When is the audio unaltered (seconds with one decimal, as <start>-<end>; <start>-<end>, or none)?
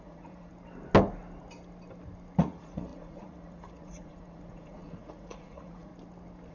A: 0.5-2.4; 5.9-6.5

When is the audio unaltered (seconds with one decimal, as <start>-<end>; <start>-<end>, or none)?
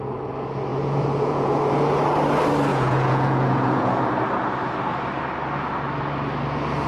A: 0.0-0.7; 1.5-2.7; 4.0-6.9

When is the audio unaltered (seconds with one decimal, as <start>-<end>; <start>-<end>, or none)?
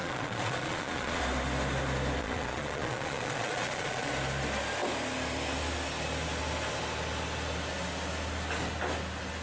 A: 1.2-2.2; 4.1-9.4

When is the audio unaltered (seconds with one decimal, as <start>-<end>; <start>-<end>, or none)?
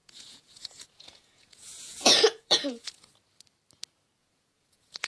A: 3.1-4.2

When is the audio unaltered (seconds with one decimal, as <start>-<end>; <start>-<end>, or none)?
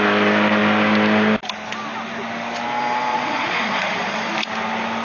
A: 0.0-3.1; 4.3-5.0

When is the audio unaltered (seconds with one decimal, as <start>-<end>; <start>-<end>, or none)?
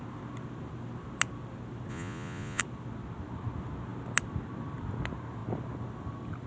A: 0.0-1.9; 2.6-6.5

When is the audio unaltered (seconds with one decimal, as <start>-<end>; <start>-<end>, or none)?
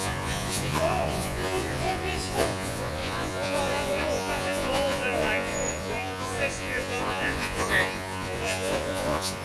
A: none